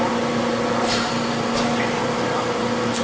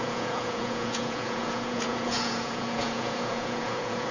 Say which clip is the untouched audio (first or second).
first